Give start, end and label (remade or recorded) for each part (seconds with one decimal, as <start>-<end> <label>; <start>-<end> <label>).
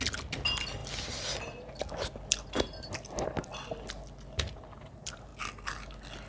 0.0-6.3 recorded